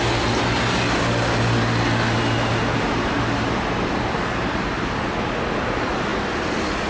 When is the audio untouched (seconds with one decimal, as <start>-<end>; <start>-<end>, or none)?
0.0-6.9